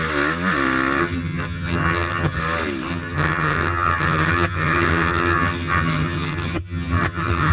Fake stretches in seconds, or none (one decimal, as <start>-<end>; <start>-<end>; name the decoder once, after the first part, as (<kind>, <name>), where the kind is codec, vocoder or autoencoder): 1.0-2.4 (vocoder, HiFi-GAN); 2.9-7.5